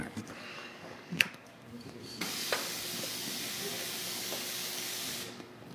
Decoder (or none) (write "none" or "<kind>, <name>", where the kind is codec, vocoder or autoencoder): codec, DAC